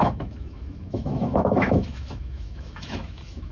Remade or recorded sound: remade